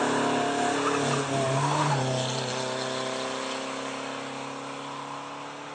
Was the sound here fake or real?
real